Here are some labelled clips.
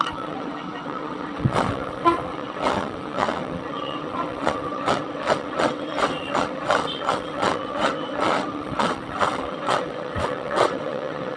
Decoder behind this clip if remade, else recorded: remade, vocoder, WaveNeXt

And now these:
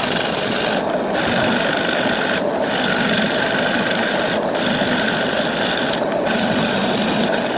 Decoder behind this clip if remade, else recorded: recorded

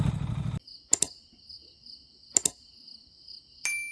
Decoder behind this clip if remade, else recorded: recorded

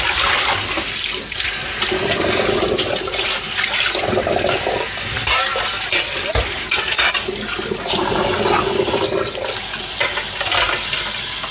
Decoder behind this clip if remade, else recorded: recorded